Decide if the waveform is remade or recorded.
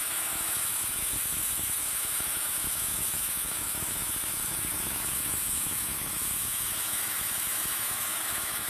remade